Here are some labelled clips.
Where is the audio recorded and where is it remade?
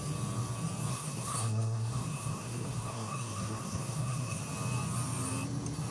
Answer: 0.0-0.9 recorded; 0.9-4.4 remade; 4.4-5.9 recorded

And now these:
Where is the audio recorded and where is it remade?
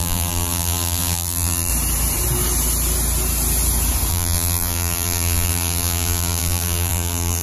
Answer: 0.0-1.7 remade; 1.7-4.1 recorded; 4.1-7.4 remade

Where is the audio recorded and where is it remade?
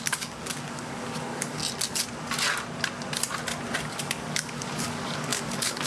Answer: 0.0-1.6 remade; 1.6-3.8 recorded; 3.8-5.9 remade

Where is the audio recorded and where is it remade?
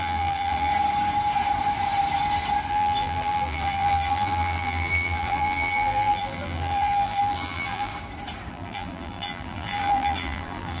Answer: 0.0-0.7 remade; 0.7-2.7 recorded; 2.7-7.9 remade; 7.9-8.5 recorded; 8.5-10.8 remade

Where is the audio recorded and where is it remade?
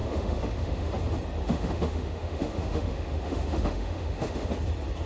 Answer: 0.0-0.9 remade; 0.9-1.4 recorded; 1.4-4.5 remade; 4.5-5.1 recorded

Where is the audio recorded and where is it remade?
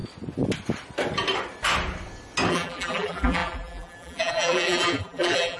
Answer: 0.0-2.5 recorded; 2.5-5.6 remade